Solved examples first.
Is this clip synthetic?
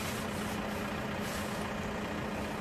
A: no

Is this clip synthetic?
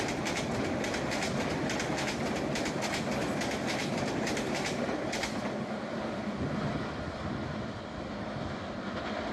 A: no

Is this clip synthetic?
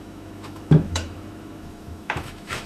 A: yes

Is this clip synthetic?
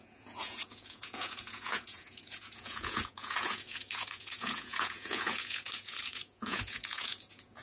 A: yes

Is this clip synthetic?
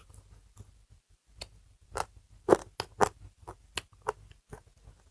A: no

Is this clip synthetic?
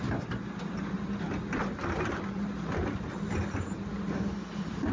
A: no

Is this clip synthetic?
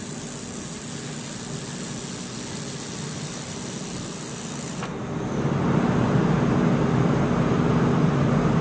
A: no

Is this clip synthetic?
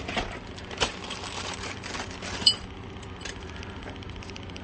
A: yes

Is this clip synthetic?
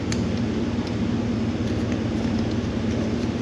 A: no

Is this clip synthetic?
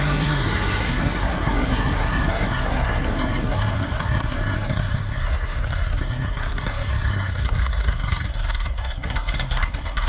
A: yes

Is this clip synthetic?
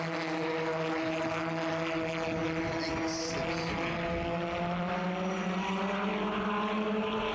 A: no